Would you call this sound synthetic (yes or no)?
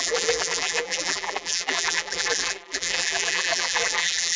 yes